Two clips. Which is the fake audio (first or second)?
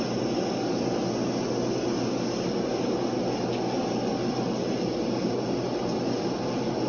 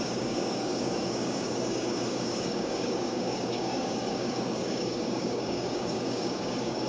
second